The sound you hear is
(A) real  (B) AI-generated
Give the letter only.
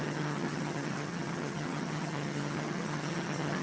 B